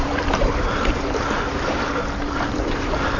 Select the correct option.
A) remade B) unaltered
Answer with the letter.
A